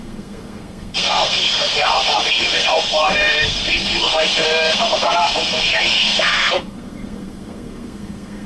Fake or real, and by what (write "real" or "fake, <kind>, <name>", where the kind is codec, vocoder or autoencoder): fake, codec, SNAC